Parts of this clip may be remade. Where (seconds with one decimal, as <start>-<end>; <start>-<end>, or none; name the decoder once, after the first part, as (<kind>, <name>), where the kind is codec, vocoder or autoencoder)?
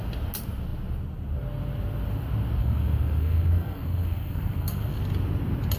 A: 2.6-5.0 (codec, SNAC)